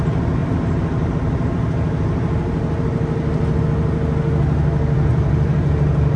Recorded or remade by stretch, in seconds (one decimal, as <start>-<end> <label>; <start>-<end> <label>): 0.0-0.4 recorded; 0.4-3.6 remade; 3.6-5.1 recorded; 5.1-5.7 remade; 5.7-6.2 recorded